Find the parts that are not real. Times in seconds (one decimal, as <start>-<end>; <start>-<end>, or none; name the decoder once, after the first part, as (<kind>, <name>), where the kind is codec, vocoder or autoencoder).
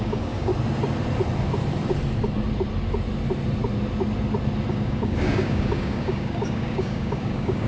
0.0-0.5 (codec, DAC); 4.7-7.7